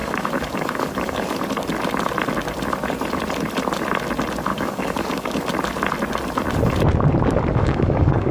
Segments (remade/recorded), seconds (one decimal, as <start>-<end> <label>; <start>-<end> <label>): 0.0-1.4 remade; 1.4-4.5 recorded; 4.5-5.4 remade; 5.4-7.5 recorded; 7.5-8.3 remade